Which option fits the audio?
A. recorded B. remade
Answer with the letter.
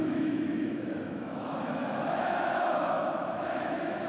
B